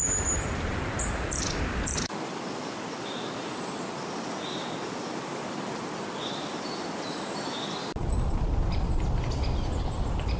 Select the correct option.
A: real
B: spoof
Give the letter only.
B